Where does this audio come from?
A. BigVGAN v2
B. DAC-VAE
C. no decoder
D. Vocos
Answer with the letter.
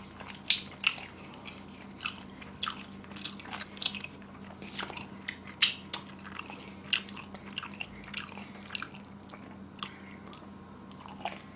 C